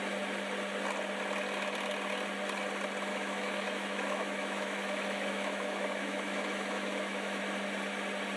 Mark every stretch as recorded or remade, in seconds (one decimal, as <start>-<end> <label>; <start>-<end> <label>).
0.0-3.1 recorded; 3.1-7.4 remade; 7.4-8.4 recorded

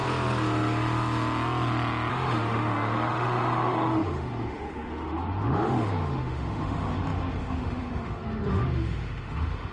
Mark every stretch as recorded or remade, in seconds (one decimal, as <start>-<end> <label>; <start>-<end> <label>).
0.0-2.1 recorded; 2.1-9.7 remade

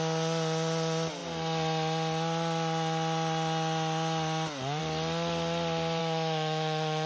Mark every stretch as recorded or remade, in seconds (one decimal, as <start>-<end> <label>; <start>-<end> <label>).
0.0-6.0 recorded; 6.0-7.1 remade

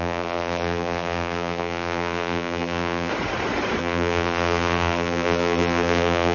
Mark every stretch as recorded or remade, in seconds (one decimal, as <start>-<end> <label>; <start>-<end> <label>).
0.0-3.1 remade; 3.1-3.8 recorded; 3.8-6.3 remade